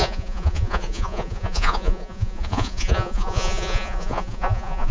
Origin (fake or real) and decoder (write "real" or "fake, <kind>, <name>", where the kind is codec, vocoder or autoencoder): fake, vocoder, Vocos